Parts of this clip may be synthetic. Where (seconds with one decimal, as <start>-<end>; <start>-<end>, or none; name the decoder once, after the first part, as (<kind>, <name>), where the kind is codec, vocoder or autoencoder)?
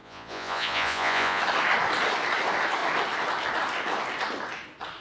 0.0-1.4 (vocoder, Vocos)